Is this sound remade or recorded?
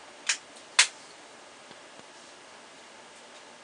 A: recorded